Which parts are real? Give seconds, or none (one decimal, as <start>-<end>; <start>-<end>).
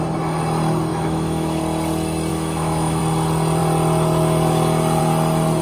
0.0-0.9; 1.6-2.3; 3.0-5.6